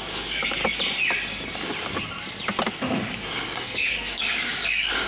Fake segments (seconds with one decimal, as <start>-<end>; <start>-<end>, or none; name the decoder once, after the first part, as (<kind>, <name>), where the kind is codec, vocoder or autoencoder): 0.0-0.6 (codec, DAC); 3.0-5.1